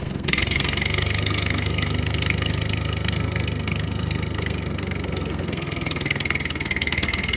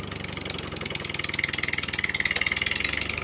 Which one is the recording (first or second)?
second